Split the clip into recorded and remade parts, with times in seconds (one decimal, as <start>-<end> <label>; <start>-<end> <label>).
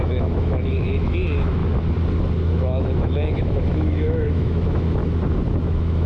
0.0-1.6 remade; 1.6-2.5 recorded; 2.5-5.0 remade; 5.0-5.6 recorded; 5.6-6.1 remade